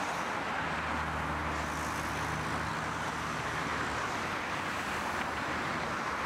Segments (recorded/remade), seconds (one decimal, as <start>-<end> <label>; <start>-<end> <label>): 0.0-6.3 recorded